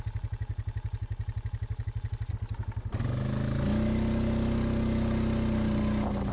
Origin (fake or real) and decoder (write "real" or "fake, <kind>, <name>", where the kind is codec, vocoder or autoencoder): real